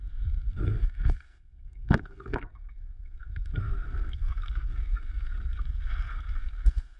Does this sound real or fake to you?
fake